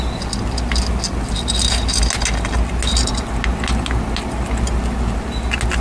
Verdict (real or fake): real